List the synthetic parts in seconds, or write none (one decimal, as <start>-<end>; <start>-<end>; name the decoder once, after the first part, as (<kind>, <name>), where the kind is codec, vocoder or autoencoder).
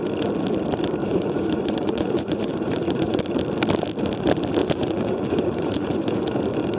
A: 1.0-3.2 (vocoder, Vocos); 4.6-6.3